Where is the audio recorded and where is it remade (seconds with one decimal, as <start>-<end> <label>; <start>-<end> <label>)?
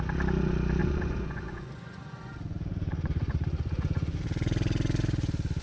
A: 0.0-0.8 recorded; 0.8-4.2 remade; 4.2-5.6 recorded